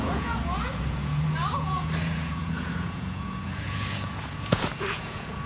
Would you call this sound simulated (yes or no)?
yes